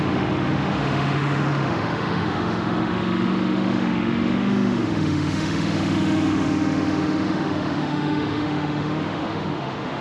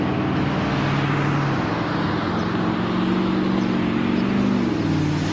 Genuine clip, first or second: second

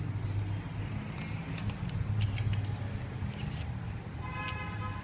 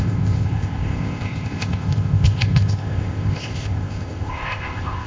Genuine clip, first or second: first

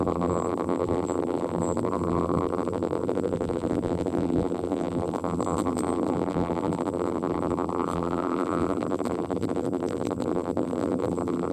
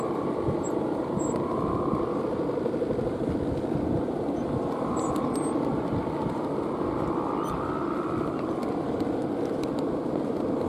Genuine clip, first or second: second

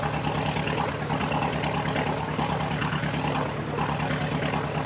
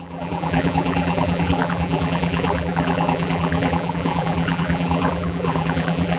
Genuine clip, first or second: first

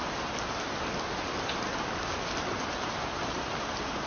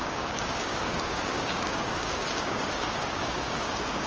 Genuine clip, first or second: first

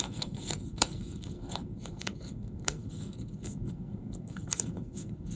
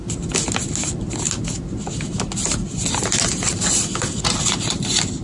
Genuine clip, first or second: second